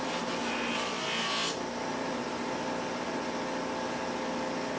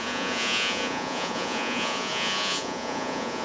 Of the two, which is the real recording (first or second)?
first